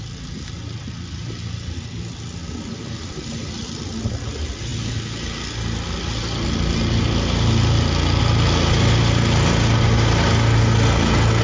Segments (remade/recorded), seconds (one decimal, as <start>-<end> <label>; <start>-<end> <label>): 0.0-11.4 recorded